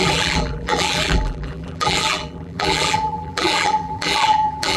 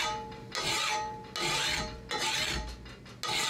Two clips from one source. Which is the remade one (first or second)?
first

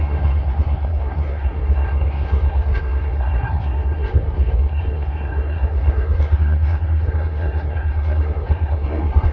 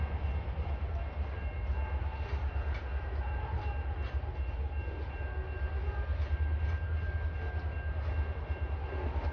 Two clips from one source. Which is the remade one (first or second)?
first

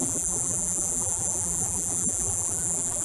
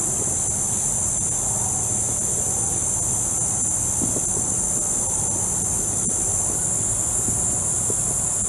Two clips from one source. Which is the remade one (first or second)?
first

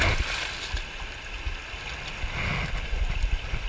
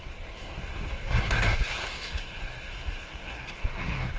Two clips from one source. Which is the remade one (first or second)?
second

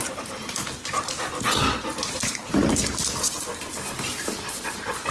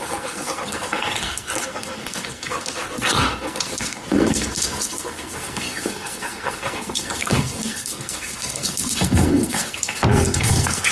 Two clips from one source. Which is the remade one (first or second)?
second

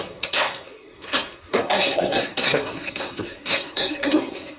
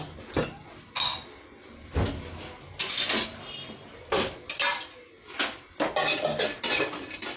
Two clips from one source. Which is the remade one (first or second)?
first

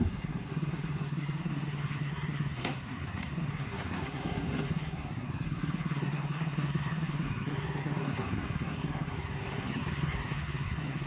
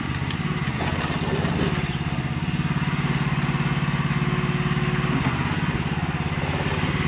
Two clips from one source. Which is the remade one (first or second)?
first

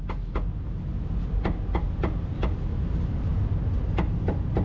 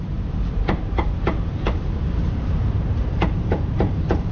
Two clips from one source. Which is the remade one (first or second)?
second